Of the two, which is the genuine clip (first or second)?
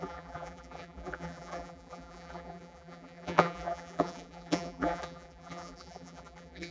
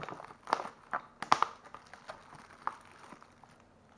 second